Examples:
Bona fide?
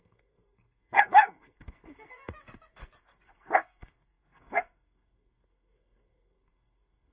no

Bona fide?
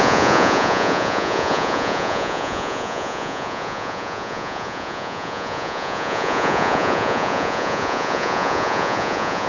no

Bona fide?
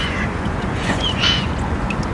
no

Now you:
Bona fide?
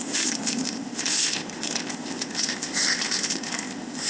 no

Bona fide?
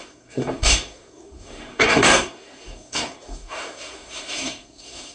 no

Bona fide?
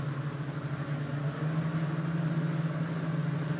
yes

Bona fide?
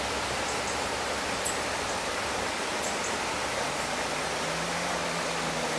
yes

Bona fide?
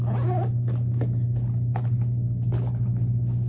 yes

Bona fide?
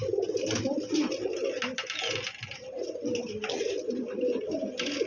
yes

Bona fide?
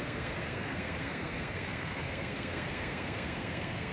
no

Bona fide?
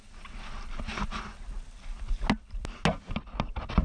yes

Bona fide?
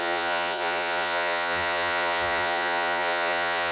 no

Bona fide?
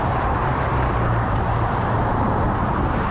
no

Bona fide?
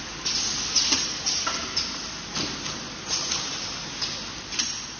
yes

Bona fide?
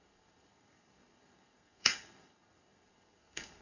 no